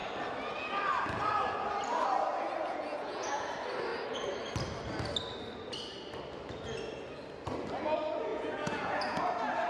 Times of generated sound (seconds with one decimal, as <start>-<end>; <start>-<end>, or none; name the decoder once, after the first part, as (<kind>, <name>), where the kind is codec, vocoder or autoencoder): 2.3-3.5 (vocoder, Vocos); 8.3-9.2